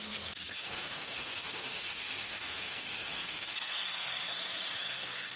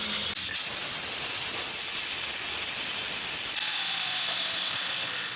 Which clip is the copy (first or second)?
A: first